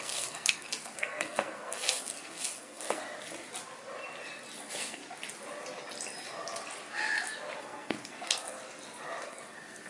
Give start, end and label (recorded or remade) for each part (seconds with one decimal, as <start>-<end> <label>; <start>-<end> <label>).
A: 0.0-3.0 remade; 3.0-4.6 recorded; 4.6-5.0 remade; 5.0-7.6 recorded; 7.6-8.6 remade; 8.6-9.2 recorded; 9.2-9.9 remade